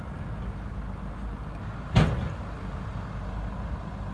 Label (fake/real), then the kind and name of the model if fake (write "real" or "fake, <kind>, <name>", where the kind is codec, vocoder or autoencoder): real